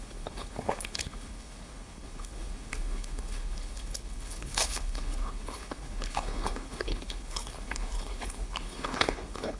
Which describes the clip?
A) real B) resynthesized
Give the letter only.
B